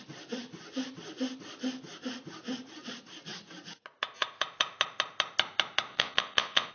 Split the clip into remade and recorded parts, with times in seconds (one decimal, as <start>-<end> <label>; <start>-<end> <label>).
0.0-5.9 recorded; 5.9-6.7 remade